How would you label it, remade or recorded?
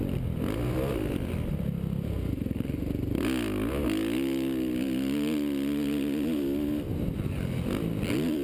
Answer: recorded